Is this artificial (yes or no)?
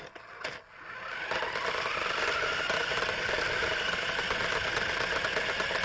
no